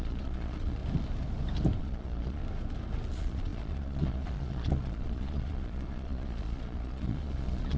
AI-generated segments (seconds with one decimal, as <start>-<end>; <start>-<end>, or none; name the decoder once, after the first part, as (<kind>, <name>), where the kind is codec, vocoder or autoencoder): 0.0-0.8 (vocoder, Vocos); 1.8-2.4; 3.1-7.8